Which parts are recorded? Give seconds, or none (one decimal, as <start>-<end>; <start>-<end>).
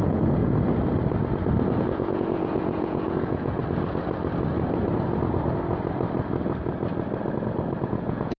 0.4-1.8; 3.6-7.8